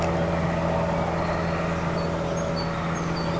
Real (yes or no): yes